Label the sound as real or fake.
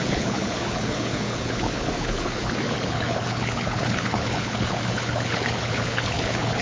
fake